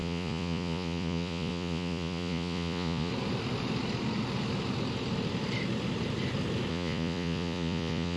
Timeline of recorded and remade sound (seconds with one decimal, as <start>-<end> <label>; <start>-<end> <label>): 0.0-3.1 remade; 3.1-6.7 recorded; 6.7-8.2 remade